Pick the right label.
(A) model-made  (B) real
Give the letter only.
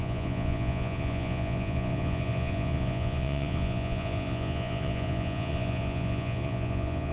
A